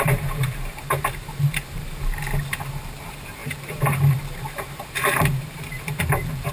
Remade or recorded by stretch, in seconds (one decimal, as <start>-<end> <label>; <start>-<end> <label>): 0.0-6.5 remade